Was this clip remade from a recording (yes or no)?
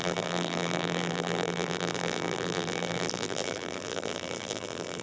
yes